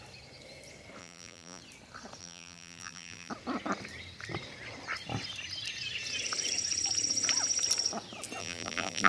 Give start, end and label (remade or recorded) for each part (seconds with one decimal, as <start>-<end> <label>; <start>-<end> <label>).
0.0-1.0 recorded; 1.0-1.6 remade; 1.6-2.2 recorded; 2.2-3.3 remade; 3.3-8.4 recorded; 8.4-9.1 remade

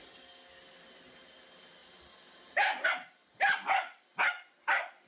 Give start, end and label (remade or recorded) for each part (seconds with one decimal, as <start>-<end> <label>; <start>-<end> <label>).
0.0-5.1 recorded

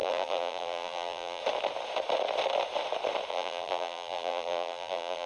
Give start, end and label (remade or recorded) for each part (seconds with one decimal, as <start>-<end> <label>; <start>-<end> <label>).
0.0-1.4 remade; 1.4-3.3 recorded; 3.3-5.3 remade

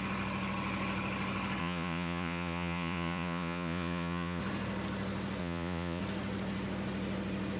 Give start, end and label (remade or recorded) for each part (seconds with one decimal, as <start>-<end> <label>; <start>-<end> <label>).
0.0-1.6 recorded; 1.6-4.4 remade; 4.4-5.4 recorded; 5.4-6.0 remade; 6.0-7.6 recorded

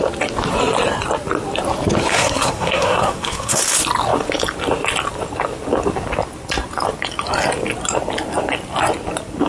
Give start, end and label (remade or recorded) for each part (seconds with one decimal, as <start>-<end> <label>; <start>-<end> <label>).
0.0-2.1 recorded; 2.1-3.6 remade; 3.6-9.5 recorded

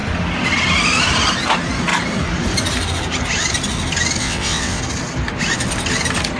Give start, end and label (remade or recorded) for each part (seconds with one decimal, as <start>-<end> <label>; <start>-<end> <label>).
0.0-4.2 recorded; 4.2-4.8 remade; 4.8-6.4 recorded

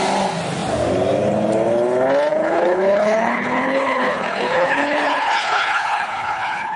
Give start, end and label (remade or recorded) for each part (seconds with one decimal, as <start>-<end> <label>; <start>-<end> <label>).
0.0-2.3 recorded; 2.3-6.8 remade

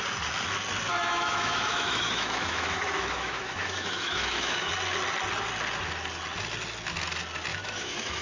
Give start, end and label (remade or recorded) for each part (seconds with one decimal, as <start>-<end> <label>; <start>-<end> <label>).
0.0-0.9 recorded; 0.9-4.7 remade; 4.7-7.5 recorded; 7.5-8.2 remade